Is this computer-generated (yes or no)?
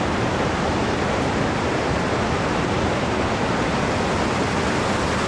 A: no